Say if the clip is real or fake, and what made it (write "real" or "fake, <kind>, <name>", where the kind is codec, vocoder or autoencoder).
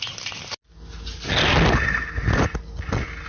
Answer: real